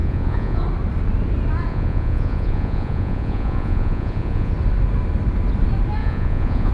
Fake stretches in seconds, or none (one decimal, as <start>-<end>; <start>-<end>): 0.0-0.6; 1.7-4.5; 6.0-6.7